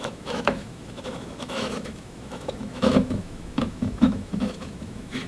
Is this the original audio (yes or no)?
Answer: no